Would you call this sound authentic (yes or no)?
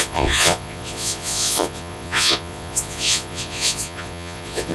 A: no